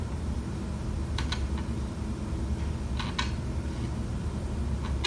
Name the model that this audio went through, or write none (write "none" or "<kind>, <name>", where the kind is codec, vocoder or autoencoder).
none